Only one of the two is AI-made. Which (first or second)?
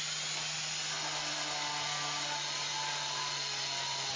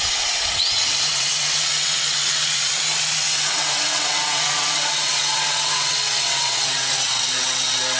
second